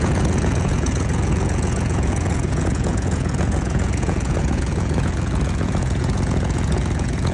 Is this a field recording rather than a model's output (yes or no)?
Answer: no